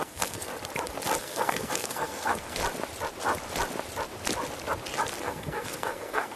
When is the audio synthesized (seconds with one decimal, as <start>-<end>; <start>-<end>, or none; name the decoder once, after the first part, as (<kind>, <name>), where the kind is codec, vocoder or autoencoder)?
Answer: 0.0-0.5 (codec, SNAC); 1.2-2.6; 5.2-6.4